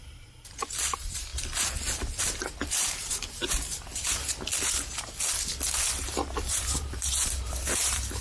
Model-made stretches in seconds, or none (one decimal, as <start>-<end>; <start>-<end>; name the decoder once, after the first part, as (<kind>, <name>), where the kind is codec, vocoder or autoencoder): 0.0-1.3 (vocoder, BigVGAN v2); 2.2-3.7; 6.6-8.2